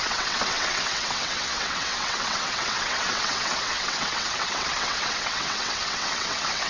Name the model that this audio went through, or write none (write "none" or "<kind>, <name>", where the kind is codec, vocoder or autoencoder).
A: vocoder, WaveNeXt